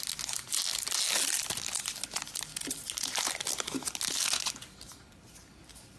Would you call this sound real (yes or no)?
yes